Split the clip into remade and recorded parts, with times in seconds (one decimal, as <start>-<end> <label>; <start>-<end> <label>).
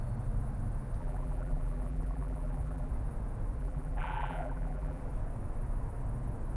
0.0-1.0 recorded; 1.0-2.9 remade; 2.9-3.6 recorded; 3.6-5.0 remade; 5.0-6.6 recorded